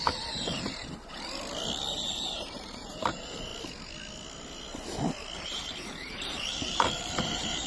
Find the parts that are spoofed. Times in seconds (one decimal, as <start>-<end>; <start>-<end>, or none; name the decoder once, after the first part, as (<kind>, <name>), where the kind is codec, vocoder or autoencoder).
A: 0.0-0.7 (vocoder, BigVGAN v2); 1.9-3.5; 5.4-7.7